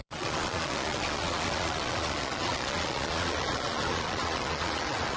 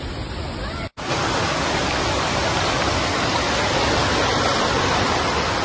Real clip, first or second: second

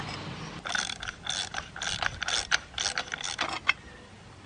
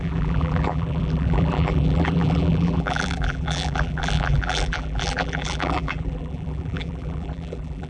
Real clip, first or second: first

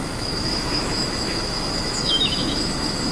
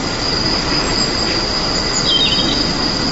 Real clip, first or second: second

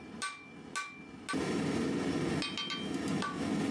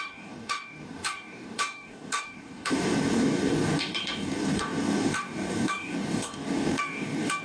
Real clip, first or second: first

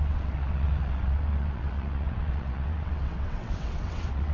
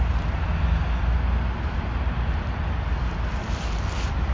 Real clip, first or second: second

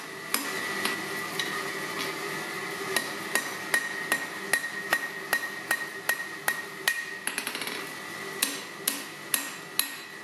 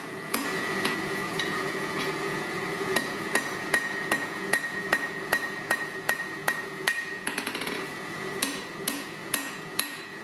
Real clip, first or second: first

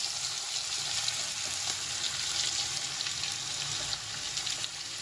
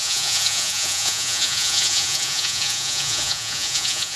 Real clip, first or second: first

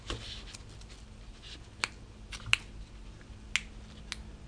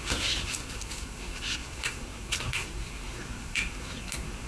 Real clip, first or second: first